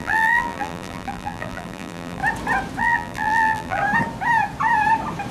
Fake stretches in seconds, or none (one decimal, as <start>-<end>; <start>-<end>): 0.0-2.2; 2.8-3.8